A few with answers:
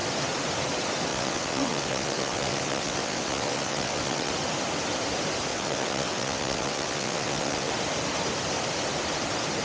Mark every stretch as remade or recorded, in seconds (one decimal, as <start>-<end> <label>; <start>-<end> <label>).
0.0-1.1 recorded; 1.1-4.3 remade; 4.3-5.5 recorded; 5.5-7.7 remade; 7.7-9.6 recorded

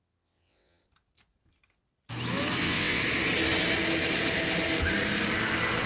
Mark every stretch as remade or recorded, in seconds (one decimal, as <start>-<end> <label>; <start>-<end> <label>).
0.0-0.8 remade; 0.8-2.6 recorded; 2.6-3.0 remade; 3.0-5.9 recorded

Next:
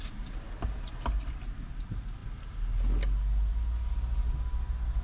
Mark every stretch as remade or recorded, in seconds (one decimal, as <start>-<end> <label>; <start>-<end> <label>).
0.0-5.0 recorded

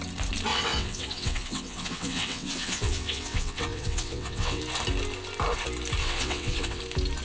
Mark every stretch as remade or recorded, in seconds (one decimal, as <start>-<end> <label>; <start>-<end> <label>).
0.0-0.5 recorded; 0.5-4.6 remade; 4.6-6.0 recorded; 6.0-6.8 remade; 6.8-7.2 recorded